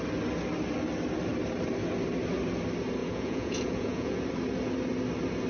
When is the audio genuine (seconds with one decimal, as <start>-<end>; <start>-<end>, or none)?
0.0-3.0; 4.2-5.5